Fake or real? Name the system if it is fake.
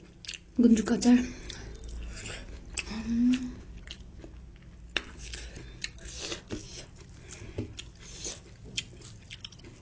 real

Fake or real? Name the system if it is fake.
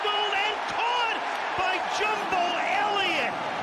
fake, vocoder, BigVGAN v2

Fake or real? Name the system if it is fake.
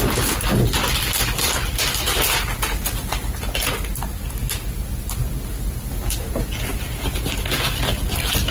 real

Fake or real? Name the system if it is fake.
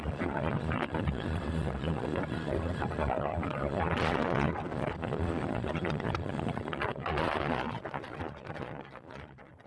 fake, vocoder, Vocos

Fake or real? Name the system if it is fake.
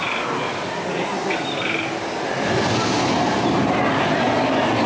real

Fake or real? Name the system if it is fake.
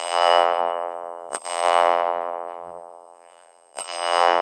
fake, vocoder, BigVGAN v2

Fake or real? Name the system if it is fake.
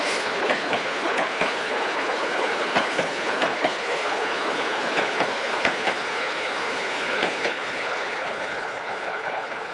fake, codec, HILCodec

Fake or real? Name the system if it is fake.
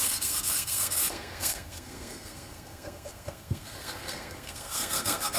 fake, codec, SNAC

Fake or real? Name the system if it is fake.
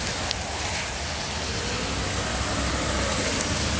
real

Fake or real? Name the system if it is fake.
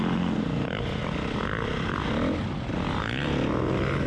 real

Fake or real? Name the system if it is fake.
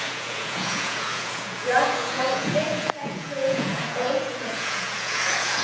fake, vocoder, Vocos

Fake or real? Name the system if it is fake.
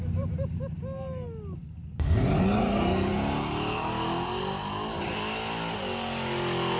real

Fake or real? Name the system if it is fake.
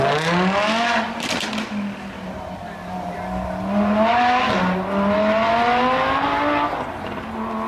real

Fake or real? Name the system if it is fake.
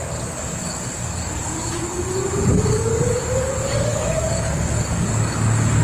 fake, codec, DAC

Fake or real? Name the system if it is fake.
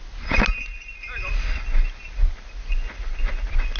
real